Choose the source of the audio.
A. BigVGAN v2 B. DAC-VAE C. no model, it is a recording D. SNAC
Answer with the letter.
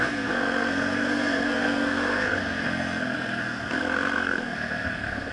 D